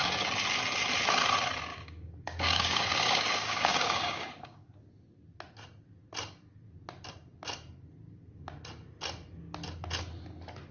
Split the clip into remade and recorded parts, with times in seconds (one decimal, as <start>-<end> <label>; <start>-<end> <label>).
0.0-1.7 recorded; 1.7-4.7 remade; 4.7-10.7 recorded